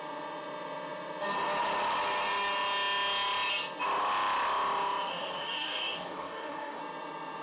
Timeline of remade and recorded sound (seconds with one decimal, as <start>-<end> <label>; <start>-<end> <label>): 0.0-5.1 recorded; 5.1-6.8 remade; 6.8-7.4 recorded